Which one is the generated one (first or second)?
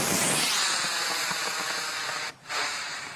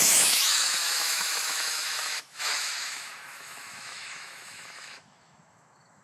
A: second